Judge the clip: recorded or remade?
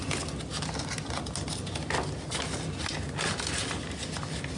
recorded